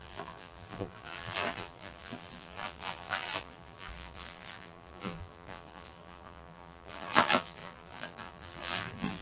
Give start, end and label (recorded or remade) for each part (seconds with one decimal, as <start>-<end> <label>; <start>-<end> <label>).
0.0-9.2 remade